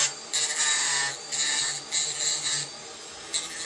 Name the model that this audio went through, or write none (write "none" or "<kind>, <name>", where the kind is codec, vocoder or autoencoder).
none